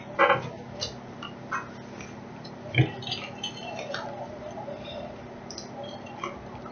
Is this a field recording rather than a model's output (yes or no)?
yes